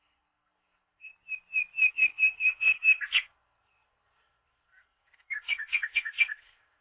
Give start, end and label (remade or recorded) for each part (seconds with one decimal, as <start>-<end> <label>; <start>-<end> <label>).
0.0-1.1 remade; 1.1-1.9 recorded; 1.9-6.8 remade